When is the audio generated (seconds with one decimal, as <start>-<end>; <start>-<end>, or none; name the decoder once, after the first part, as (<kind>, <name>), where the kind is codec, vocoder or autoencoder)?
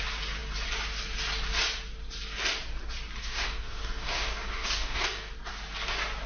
3.2-5.3 (codec, DAC)